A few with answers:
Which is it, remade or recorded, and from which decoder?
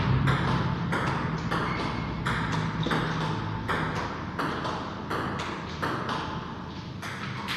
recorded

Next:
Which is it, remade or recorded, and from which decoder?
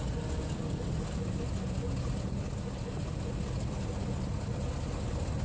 recorded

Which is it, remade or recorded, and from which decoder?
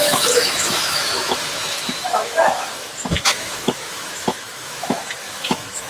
remade, autoencoder, DAC-VAE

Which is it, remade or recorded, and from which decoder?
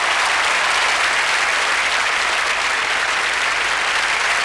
recorded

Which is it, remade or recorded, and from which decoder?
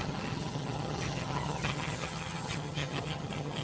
remade, vocoder, HiFi-GAN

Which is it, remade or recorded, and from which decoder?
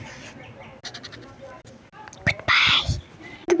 recorded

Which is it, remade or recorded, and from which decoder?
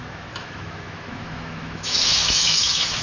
remade, autoencoder, DAC-VAE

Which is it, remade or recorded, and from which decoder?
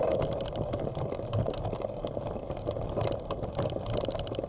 recorded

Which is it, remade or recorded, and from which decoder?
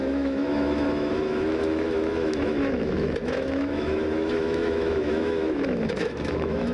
remade, autoencoder, DAC-VAE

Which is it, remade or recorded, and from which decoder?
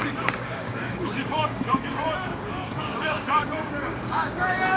remade, codec, DAC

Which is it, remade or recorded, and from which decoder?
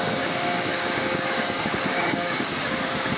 remade, codec, DAC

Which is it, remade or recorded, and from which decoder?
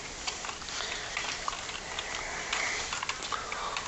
recorded